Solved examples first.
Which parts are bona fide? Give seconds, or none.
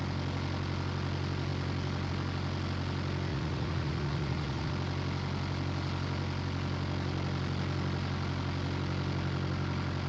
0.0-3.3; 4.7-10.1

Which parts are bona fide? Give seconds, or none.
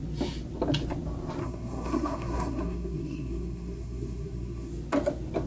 0.0-1.4; 4.7-5.5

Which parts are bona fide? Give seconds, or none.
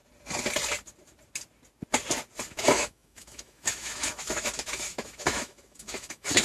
0.0-2.5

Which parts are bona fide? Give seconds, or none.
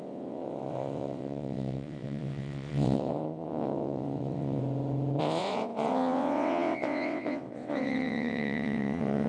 4.6-5.2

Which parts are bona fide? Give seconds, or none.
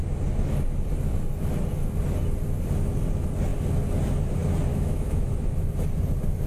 0.0-4.7; 5.3-6.5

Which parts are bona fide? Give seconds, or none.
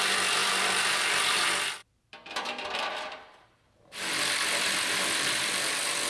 0.0-0.4; 1.4-1.8; 5.5-6.1